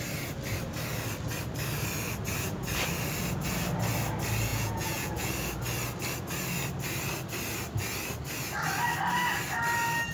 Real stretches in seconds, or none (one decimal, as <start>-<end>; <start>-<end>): 0.0-4.5; 5.3-10.1

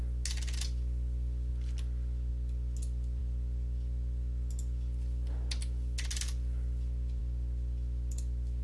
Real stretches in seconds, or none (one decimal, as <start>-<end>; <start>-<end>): 0.0-8.6

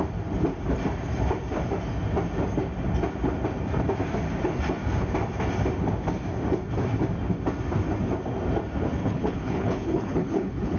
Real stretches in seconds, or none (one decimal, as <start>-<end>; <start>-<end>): 0.0-9.0

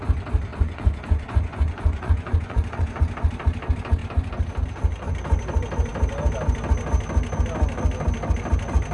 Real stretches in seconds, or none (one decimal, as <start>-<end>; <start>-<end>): 0.0-0.5; 3.0-8.9

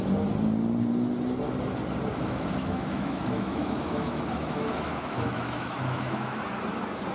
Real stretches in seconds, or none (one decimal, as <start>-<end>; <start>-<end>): 0.0-2.1; 6.4-7.1

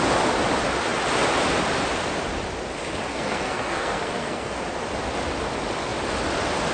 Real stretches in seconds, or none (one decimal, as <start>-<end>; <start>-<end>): 0.0-3.1; 4.6-6.7